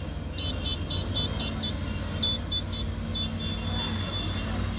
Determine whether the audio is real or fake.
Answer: real